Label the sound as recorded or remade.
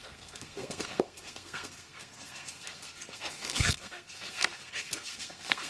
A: remade